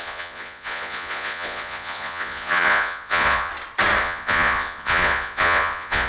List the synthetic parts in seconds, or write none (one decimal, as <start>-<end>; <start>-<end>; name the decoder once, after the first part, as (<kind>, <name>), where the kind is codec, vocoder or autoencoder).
0.0-3.5 (vocoder, Vocos); 4.0-6.1